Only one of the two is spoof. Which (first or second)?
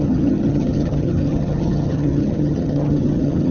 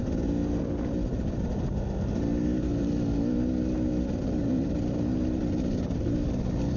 first